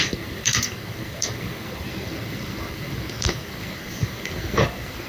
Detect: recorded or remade remade